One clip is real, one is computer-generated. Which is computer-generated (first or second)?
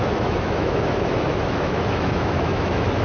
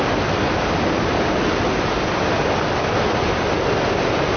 first